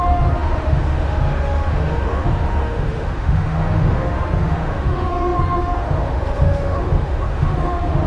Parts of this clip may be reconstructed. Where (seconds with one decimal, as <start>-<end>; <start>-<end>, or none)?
0.0-8.1